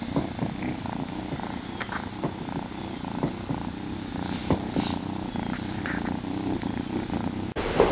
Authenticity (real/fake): real